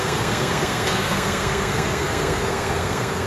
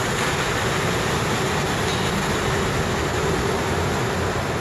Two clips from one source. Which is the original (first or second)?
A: second